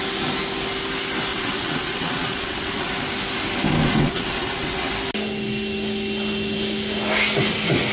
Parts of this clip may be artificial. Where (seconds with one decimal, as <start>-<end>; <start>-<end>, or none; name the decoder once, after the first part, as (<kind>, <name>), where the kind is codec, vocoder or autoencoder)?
1.3-2.9 (vocoder, WaveNeXt); 3.8-4.9